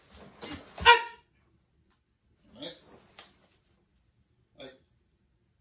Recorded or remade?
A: recorded